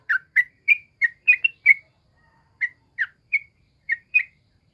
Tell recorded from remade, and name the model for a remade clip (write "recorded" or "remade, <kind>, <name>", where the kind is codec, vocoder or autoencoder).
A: remade, vocoder, BigVGAN v2